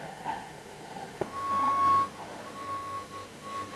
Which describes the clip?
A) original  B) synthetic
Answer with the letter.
B